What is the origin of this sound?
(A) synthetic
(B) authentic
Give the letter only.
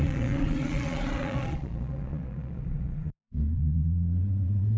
A